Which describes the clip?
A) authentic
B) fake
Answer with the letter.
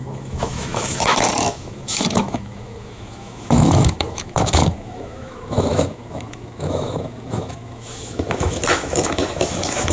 B